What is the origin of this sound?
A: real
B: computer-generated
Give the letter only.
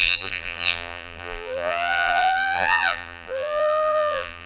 B